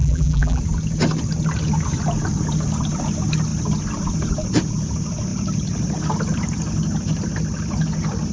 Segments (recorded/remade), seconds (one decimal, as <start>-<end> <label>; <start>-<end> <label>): 0.0-0.6 remade; 0.6-8.3 recorded